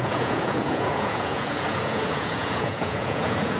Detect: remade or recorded remade